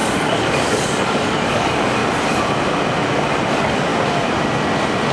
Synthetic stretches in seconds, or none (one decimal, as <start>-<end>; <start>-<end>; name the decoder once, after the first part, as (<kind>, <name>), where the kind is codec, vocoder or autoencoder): 0.0-2.0 (codec, DAC); 3.5-3.9